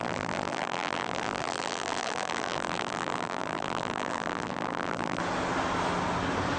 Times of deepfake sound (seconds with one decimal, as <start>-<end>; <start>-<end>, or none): 0.0-5.2